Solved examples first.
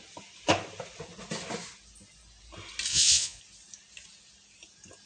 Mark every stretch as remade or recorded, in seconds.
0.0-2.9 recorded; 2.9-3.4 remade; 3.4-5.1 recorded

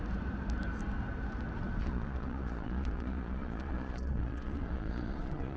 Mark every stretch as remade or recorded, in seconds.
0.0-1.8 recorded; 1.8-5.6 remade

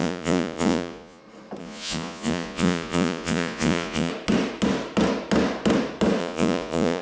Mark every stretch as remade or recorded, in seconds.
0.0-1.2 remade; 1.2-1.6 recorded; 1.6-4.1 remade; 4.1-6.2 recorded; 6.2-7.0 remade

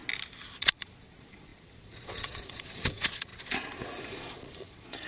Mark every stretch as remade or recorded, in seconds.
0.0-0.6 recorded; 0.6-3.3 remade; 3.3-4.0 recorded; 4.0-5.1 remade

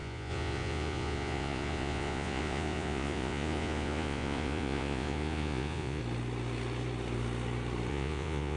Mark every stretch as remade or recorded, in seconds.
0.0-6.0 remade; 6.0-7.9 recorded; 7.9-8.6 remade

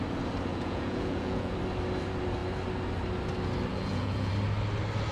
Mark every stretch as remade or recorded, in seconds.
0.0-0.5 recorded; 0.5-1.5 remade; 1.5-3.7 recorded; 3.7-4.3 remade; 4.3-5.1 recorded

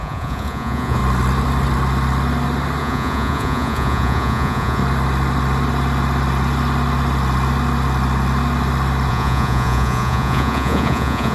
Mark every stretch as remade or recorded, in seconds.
0.0-1.0 remade; 1.0-2.8 recorded; 2.8-4.8 remade; 4.8-9.1 recorded; 9.1-11.3 remade